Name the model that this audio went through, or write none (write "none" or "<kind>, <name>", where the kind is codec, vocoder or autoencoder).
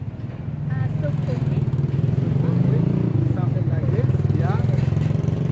none